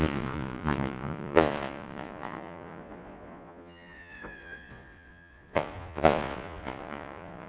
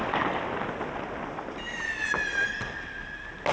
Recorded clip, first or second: second